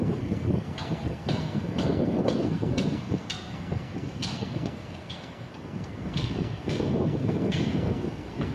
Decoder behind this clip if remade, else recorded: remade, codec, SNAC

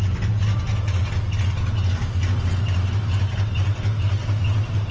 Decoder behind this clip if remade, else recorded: recorded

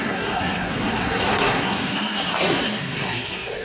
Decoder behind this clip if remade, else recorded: remade, codec, SNAC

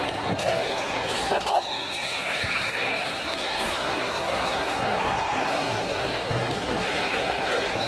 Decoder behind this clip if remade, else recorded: remade, codec, SNAC